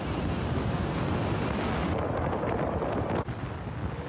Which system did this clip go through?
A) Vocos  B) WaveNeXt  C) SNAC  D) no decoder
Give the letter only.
D